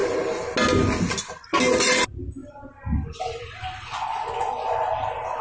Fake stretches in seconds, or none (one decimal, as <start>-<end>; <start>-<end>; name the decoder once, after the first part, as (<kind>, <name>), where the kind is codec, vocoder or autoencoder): none